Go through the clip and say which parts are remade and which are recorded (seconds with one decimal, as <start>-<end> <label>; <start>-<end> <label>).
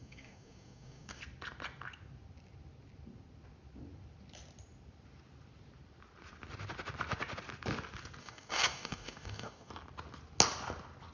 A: 0.0-1.2 remade; 1.2-8.2 recorded; 8.2-9.7 remade; 9.7-11.1 recorded